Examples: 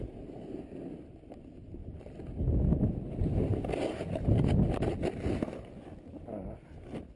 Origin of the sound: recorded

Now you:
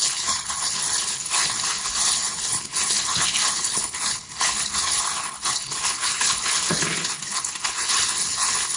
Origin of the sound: remade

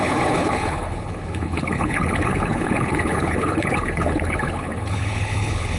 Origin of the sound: remade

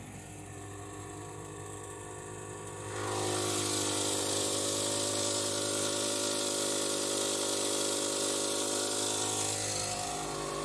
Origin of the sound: recorded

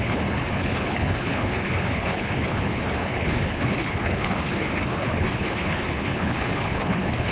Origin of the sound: remade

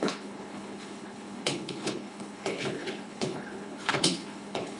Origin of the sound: remade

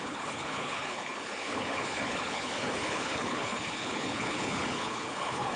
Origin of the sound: remade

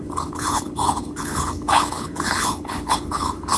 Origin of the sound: remade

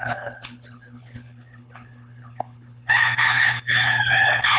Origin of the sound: remade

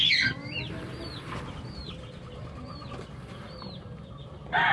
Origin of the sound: recorded